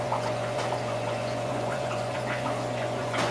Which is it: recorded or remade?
remade